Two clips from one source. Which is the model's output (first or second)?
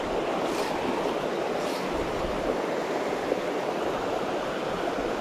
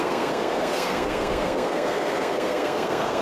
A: second